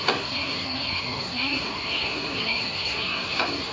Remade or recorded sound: remade